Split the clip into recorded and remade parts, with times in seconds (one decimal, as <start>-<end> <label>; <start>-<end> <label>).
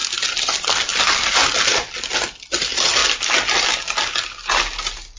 0.0-5.2 recorded